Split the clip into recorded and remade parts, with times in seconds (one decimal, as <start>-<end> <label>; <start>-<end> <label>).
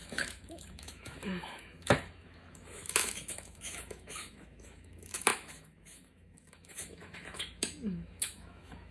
0.0-8.9 remade